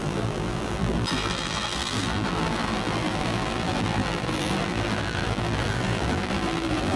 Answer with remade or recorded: remade